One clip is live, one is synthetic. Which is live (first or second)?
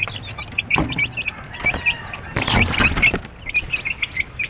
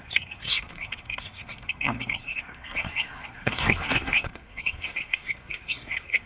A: first